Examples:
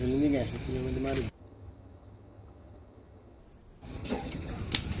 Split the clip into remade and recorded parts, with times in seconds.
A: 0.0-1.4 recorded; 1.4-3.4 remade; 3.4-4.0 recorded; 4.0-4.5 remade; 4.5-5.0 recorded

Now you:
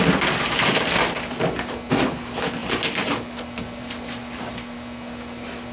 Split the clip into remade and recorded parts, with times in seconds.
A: 0.0-5.7 recorded

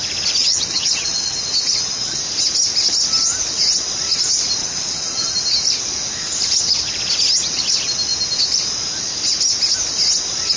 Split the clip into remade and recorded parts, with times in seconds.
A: 0.0-0.4 recorded; 0.4-2.2 remade; 2.2-4.6 recorded; 4.6-5.3 remade; 5.3-10.6 recorded

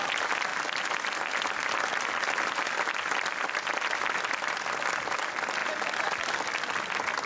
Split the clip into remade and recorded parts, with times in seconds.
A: 0.0-7.3 recorded